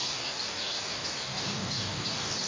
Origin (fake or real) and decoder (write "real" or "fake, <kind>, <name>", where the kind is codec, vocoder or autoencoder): fake, codec, DAC